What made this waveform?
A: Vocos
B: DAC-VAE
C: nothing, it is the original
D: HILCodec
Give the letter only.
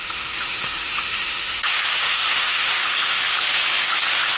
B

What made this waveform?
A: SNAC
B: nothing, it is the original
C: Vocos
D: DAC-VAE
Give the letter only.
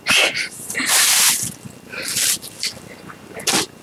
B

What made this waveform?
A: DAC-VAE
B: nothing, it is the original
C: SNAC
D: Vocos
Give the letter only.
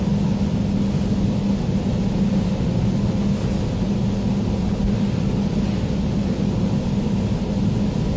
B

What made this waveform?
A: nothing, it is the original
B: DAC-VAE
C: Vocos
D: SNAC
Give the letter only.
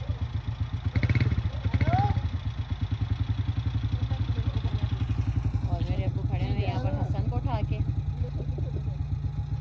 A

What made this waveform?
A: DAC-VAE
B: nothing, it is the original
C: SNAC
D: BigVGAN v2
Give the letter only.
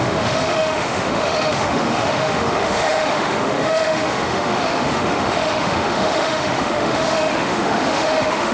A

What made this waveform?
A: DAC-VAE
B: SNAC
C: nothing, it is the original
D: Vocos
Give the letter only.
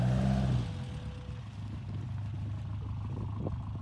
C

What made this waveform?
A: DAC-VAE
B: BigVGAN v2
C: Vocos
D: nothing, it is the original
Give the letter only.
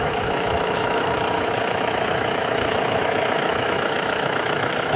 A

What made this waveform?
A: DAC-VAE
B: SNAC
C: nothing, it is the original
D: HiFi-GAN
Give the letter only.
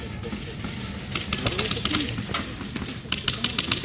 C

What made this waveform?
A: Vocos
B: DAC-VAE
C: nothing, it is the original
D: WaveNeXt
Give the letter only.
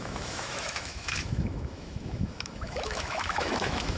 B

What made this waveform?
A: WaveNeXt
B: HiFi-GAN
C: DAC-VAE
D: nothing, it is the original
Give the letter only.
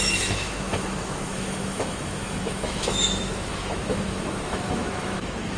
C